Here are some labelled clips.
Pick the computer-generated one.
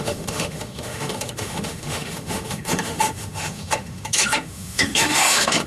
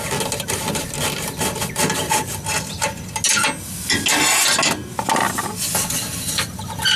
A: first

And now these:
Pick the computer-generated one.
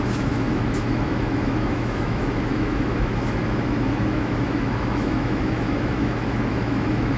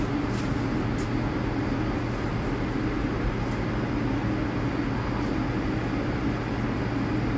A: first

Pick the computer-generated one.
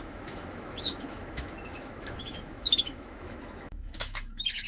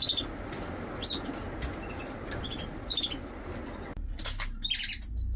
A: first